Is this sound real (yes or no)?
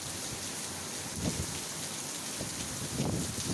yes